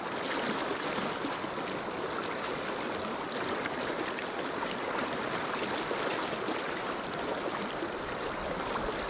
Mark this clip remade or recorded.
recorded